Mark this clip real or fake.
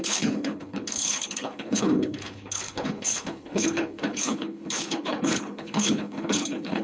fake